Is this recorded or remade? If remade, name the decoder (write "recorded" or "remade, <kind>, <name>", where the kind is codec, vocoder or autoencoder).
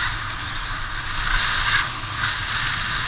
recorded